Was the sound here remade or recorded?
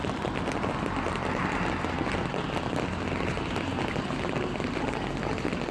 recorded